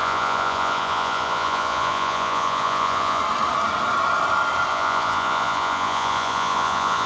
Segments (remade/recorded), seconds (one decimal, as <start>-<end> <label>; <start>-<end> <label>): 0.0-3.2 remade; 3.2-4.7 recorded; 4.7-7.1 remade